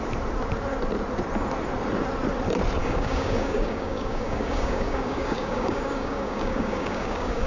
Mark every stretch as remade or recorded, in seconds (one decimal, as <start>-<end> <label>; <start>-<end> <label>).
0.0-2.8 recorded; 2.8-7.5 remade